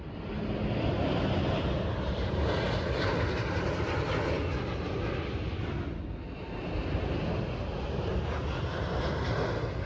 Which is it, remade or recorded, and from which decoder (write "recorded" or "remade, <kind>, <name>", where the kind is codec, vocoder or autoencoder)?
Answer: recorded